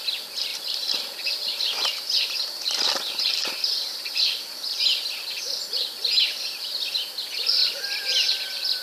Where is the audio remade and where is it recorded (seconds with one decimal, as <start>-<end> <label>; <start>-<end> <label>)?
0.0-0.5 recorded; 0.5-3.5 remade; 3.5-3.9 recorded; 3.9-4.8 remade; 4.8-8.8 recorded